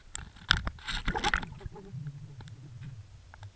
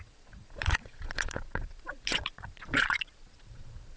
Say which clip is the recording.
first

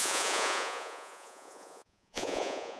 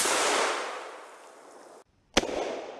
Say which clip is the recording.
second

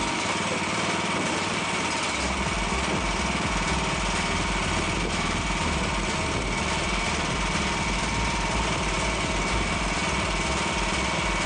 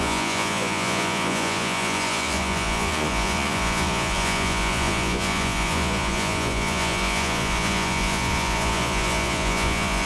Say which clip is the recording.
first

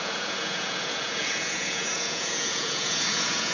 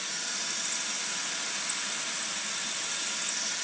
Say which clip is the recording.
second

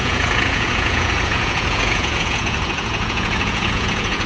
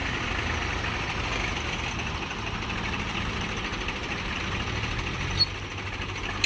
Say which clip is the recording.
second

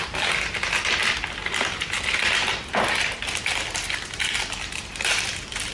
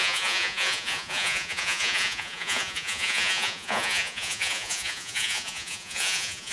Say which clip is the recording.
first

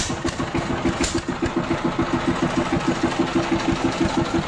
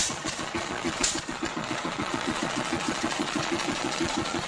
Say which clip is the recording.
first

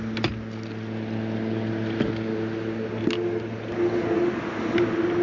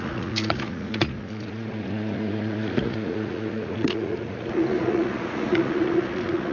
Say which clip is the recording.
first